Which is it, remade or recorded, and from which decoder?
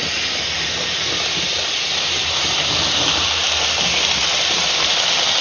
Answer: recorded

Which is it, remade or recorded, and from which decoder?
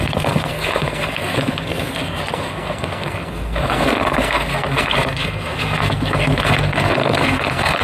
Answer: remade, codec, SNAC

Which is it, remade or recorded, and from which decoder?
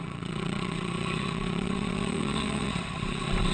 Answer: remade, vocoder, WaveNeXt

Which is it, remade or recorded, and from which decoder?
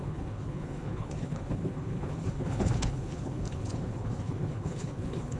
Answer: remade, codec, HILCodec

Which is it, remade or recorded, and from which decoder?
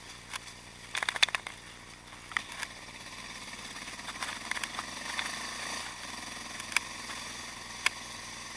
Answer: recorded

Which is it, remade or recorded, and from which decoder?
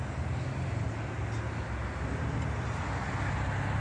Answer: recorded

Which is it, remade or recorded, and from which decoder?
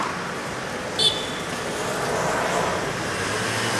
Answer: recorded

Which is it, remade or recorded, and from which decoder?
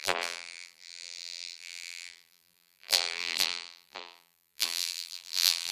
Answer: remade, vocoder, BigVGAN v2